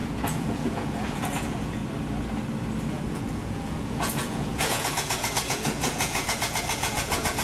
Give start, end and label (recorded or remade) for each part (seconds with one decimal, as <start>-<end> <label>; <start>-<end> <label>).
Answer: 0.0-1.8 remade; 1.8-2.9 recorded; 2.9-7.4 remade